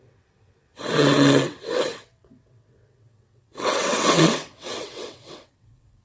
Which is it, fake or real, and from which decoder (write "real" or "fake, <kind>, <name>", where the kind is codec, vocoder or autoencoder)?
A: fake, vocoder, WaveNeXt